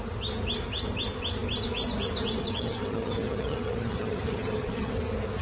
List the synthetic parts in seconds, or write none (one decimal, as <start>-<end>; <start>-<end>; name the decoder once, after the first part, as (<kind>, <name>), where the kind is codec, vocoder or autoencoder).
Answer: 2.4-4.9 (vocoder, HiFi-GAN)

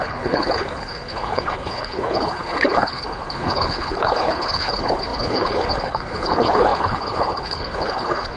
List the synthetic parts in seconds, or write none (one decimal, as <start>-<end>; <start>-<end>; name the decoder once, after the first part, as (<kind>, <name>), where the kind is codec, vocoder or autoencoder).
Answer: 0.0-8.4 (codec, HILCodec)